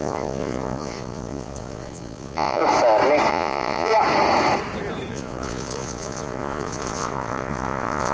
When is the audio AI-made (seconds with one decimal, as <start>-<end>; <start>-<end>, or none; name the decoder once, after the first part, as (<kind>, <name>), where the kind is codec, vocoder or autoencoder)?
0.0-2.6 (vocoder, Vocos); 3.3-3.9; 5.1-8.1